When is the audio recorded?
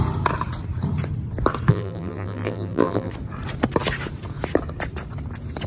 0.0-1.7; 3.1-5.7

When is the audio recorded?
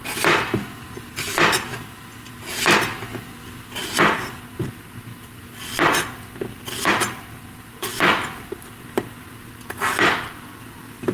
0.0-11.1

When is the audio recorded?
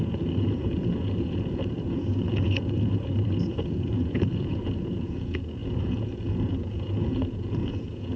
none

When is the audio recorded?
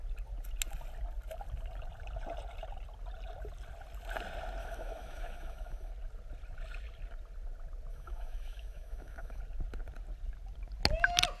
0.0-4.6; 5.9-7.9; 9.4-11.4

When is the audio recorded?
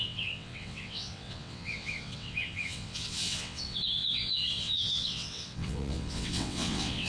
none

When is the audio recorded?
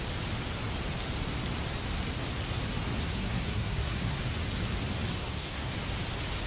0.0-3.1; 4.2-5.1; 5.7-6.5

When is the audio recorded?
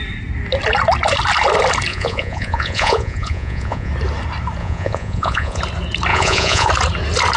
0.0-1.9; 3.9-4.6; 5.6-6.1; 6.7-7.4